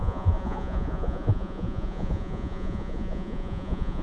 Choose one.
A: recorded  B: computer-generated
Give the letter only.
B